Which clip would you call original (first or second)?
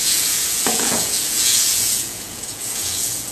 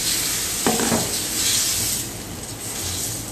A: second